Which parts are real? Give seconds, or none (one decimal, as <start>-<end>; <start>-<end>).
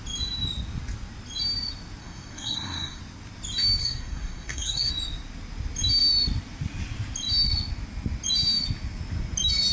0.0-2.0; 3.0-3.8; 4.9-9.7